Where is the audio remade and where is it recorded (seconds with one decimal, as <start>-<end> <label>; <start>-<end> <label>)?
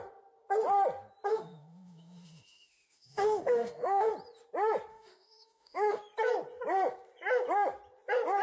0.0-1.3 recorded; 1.3-4.1 remade; 4.1-4.9 recorded; 4.9-6.0 remade; 6.0-8.4 recorded